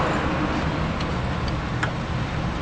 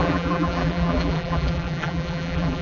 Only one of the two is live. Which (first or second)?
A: first